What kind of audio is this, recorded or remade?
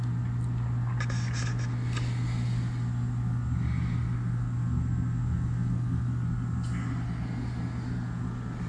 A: recorded